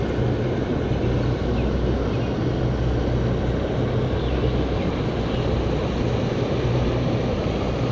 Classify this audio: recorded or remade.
recorded